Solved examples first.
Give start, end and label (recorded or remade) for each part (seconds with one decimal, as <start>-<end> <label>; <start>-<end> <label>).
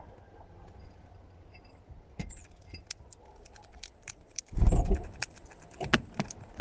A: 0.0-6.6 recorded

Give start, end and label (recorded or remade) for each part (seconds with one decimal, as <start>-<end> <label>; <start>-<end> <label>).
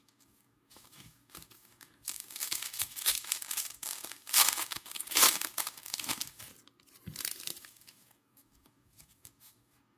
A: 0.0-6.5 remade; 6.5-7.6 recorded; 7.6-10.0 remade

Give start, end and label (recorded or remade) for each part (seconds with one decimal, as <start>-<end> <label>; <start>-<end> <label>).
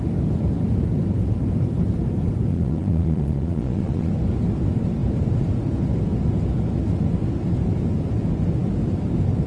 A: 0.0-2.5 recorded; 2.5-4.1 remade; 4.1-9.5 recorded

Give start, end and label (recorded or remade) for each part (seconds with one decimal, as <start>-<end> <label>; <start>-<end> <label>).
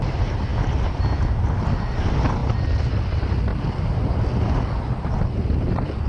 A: 0.0-3.5 recorded; 3.5-5.1 remade; 5.1-6.1 recorded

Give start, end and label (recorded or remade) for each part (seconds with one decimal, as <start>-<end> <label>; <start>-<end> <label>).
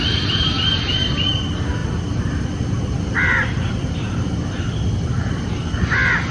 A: 0.0-6.3 recorded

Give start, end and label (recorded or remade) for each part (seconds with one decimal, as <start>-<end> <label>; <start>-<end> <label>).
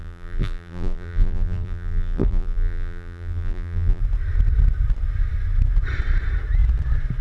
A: 0.0-4.0 remade; 4.0-7.2 recorded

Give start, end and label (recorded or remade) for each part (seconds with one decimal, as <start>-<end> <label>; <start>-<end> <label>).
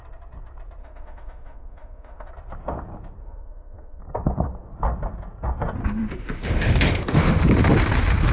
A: 0.0-0.8 recorded; 0.8-2.3 remade; 2.3-3.2 recorded; 3.2-4.0 remade; 4.0-5.8 recorded; 5.8-7.4 remade; 7.4-8.3 recorded